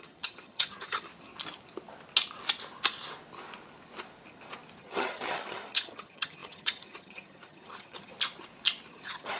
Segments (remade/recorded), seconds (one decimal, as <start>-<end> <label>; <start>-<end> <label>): 0.0-1.1 remade; 1.1-4.8 recorded; 4.8-8.1 remade; 8.1-8.9 recorded; 8.9-9.4 remade